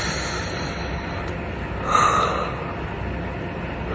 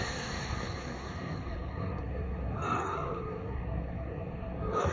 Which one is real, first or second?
first